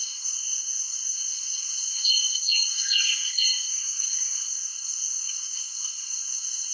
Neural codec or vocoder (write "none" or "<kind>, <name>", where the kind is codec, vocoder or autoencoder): codec, SNAC